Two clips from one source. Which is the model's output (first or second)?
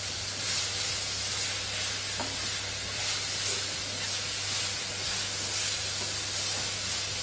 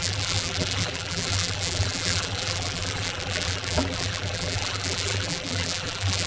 second